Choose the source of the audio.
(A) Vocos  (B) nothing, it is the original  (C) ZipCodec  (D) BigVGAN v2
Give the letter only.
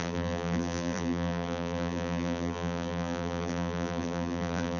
D